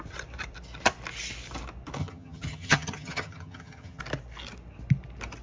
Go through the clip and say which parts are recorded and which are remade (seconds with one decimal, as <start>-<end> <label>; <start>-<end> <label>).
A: 0.0-2.0 recorded; 2.0-4.0 remade; 4.0-5.4 recorded